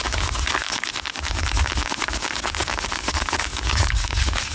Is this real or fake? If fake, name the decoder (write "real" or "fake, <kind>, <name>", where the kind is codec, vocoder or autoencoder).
fake, codec, DAC